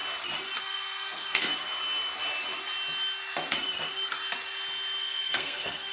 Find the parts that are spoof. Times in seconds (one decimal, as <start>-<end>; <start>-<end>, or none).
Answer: 0.6-1.5; 5.0-5.9